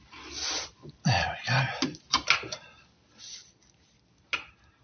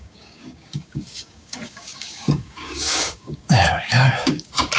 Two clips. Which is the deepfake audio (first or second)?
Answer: second